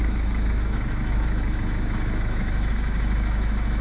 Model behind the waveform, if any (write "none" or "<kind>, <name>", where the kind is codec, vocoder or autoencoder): autoencoder, DAC-VAE